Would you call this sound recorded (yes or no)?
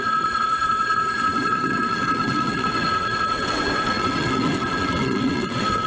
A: no